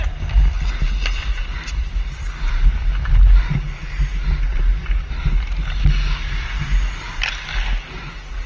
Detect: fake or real real